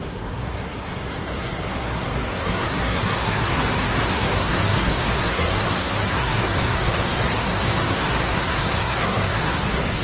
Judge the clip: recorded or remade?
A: remade